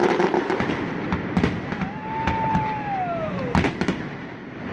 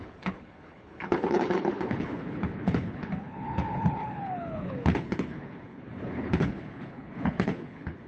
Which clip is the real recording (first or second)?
first